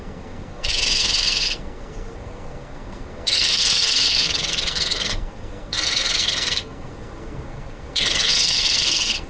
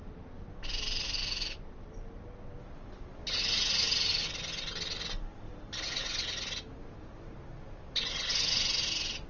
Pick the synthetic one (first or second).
first